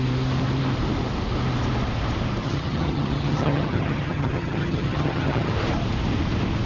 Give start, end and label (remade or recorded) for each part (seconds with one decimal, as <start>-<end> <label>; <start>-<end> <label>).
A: 0.0-2.4 recorded; 2.4-5.5 remade; 5.5-6.7 recorded